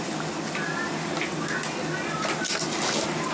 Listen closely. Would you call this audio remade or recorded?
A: recorded